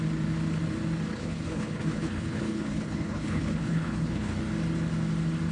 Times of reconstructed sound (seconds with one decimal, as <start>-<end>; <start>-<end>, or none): 1.1-4.4